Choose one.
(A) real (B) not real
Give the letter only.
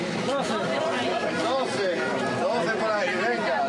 A